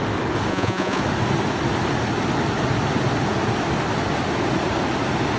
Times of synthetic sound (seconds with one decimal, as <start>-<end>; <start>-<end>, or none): 0.5-1.0